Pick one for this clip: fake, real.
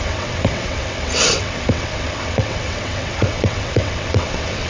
fake